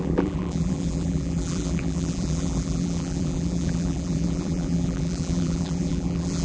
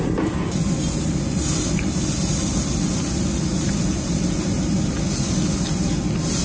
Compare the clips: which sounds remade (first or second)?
first